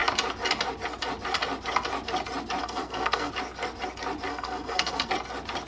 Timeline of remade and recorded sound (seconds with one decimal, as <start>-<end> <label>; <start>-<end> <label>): 0.0-2.6 recorded; 2.6-3.3 remade; 3.3-4.3 recorded; 4.3-5.1 remade; 5.1-5.7 recorded